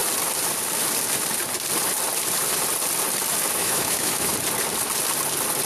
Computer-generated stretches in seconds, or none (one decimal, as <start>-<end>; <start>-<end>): 3.6-4.3